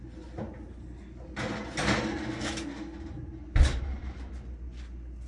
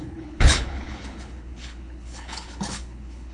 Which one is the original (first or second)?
first